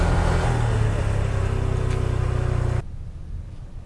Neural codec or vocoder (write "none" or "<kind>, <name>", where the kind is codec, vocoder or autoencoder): none